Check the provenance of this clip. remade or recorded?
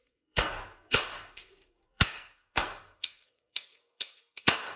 remade